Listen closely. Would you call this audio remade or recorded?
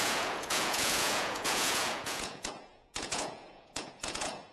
remade